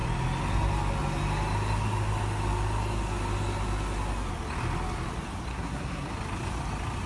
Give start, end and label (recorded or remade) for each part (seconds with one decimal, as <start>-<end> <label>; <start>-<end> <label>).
0.0-5.5 recorded; 5.5-6.1 remade; 6.1-7.1 recorded